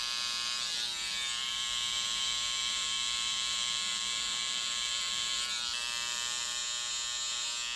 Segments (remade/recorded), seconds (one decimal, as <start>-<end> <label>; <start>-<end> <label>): 0.0-6.6 remade; 6.6-7.8 recorded